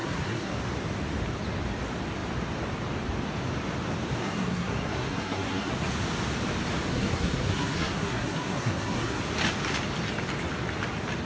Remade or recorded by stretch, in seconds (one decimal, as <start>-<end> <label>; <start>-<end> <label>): 0.0-0.6 remade; 0.6-4.2 recorded; 4.2-5.7 remade; 5.7-6.9 recorded; 6.9-9.2 remade; 9.2-11.3 recorded